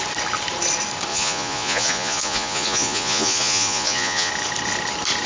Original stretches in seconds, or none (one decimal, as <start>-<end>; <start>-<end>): 0.0-1.1; 4.3-5.3